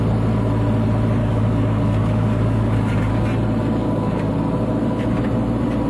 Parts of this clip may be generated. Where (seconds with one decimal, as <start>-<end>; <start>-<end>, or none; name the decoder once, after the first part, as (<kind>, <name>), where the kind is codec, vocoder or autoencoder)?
1.2-3.1 (codec, DAC); 3.8-4.3